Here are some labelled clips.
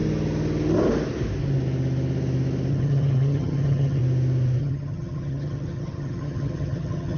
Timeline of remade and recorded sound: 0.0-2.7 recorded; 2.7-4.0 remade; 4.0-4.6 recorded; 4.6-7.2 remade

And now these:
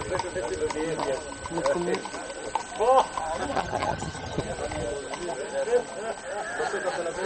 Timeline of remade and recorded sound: 0.0-3.5 recorded; 3.5-4.4 remade; 4.4-7.3 recorded

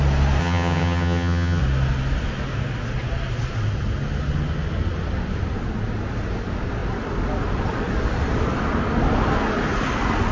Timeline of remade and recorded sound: 0.0-0.4 recorded; 0.4-1.6 remade; 1.6-10.3 recorded

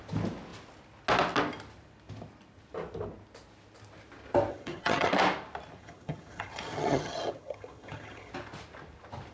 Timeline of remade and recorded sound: 0.0-4.5 recorded; 4.5-5.1 remade; 5.1-5.8 recorded; 5.8-8.3 remade; 8.3-9.3 recorded

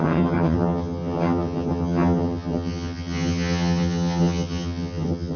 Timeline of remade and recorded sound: 0.0-5.4 remade

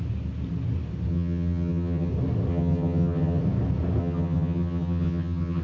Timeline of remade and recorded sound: 0.0-1.1 recorded; 1.1-2.1 remade; 2.1-2.5 recorded; 2.5-3.4 remade; 3.4-4.0 recorded; 4.0-5.6 remade

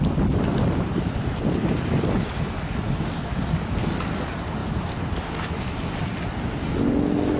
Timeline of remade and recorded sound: 0.0-7.4 recorded